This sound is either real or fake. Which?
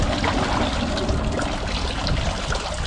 real